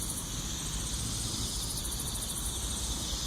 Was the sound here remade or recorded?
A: recorded